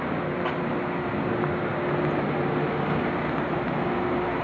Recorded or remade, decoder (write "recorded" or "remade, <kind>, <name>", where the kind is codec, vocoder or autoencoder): recorded